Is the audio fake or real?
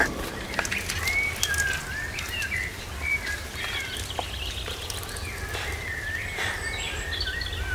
real